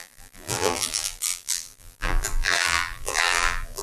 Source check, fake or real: fake